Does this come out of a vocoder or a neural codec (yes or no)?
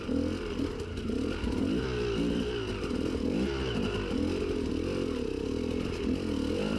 no